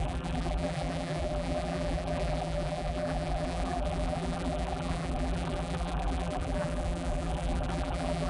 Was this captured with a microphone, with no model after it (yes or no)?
no